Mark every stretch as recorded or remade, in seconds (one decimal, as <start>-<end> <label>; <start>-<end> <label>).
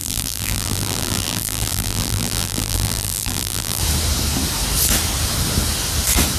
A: 0.0-3.8 remade; 3.8-6.4 recorded